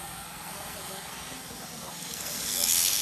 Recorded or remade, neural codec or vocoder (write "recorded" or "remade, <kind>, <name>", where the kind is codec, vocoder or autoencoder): remade, codec, SNAC